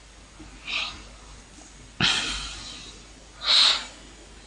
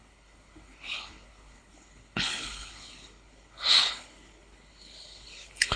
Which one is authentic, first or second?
first